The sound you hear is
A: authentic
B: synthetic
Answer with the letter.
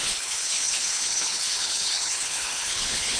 B